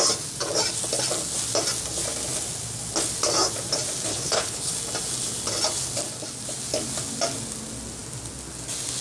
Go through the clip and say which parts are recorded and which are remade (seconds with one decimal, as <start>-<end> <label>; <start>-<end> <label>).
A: 0.0-4.1 recorded; 4.1-4.7 remade; 4.7-9.0 recorded